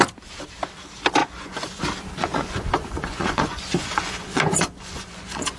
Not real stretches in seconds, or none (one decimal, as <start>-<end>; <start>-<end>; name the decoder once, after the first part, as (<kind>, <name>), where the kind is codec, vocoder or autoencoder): 1.2-1.8 (vocoder, Vocos); 2.2-5.6